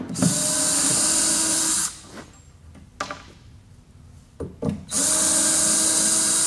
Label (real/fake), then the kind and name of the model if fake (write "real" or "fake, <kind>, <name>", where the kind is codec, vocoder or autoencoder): real